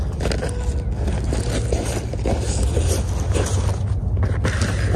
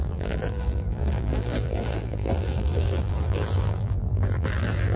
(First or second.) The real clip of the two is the first